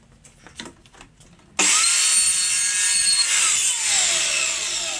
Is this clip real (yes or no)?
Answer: yes